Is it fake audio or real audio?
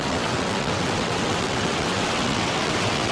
fake